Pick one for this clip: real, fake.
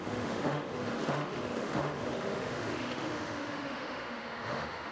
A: fake